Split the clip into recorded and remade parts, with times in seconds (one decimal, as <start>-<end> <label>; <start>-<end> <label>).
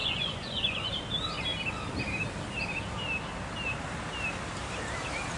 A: 0.0-0.9 remade; 0.9-5.4 recorded